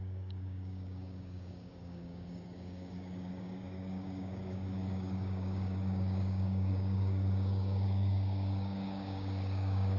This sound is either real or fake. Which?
fake